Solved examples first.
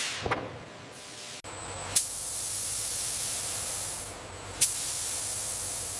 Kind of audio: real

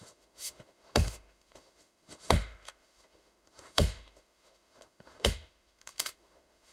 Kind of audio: fake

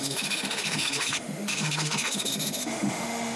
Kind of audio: fake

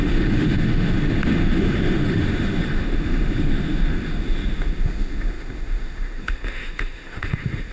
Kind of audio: fake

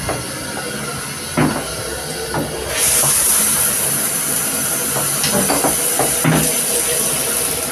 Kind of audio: real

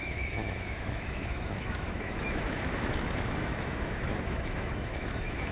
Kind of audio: fake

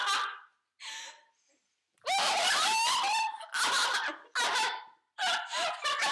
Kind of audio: real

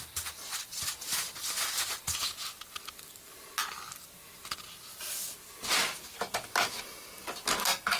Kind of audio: real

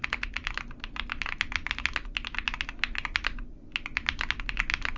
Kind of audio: real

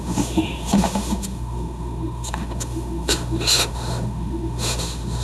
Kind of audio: fake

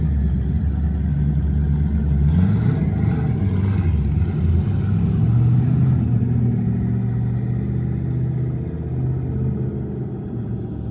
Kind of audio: real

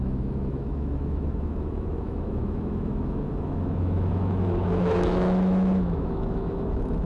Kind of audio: fake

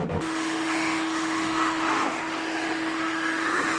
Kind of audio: fake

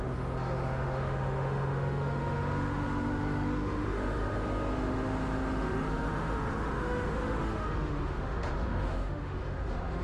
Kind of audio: fake